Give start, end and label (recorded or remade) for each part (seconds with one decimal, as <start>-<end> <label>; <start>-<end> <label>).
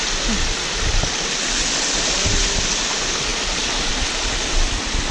0.0-3.3 recorded; 3.3-3.9 remade; 3.9-5.1 recorded